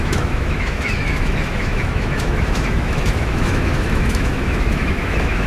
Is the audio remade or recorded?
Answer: remade